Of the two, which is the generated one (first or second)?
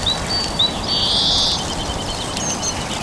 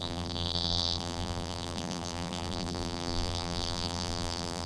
second